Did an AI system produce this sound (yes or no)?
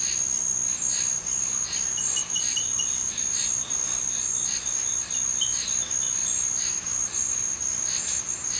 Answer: no